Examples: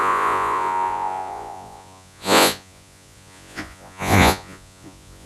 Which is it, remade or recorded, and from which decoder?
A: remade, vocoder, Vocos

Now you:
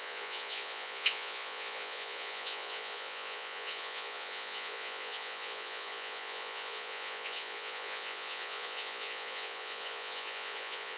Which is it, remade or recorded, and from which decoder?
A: remade, vocoder, Vocos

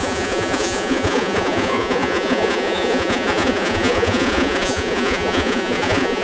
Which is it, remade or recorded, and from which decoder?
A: remade, vocoder, Vocos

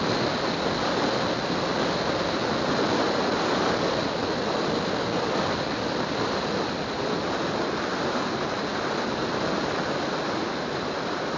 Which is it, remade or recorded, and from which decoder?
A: recorded